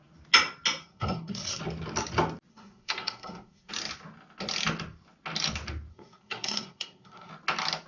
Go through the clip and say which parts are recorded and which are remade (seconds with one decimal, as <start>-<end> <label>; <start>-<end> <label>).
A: 0.0-0.8 recorded; 0.8-1.6 remade; 1.6-2.5 recorded; 2.5-3.7 remade; 3.7-5.9 recorded; 5.9-7.3 remade; 7.3-7.9 recorded